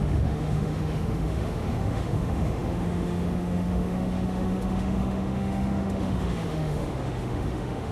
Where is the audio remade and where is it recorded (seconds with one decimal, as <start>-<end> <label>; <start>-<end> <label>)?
0.0-7.9 remade